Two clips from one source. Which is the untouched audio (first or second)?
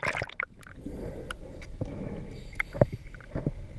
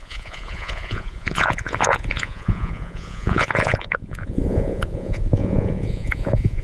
first